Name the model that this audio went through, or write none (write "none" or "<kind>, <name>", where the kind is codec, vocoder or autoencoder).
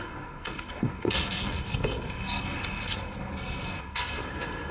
codec, SNAC